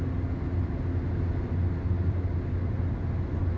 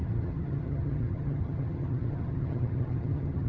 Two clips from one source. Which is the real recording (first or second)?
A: first